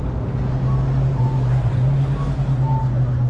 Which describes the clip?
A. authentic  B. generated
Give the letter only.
A